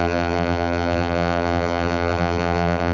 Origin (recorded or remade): remade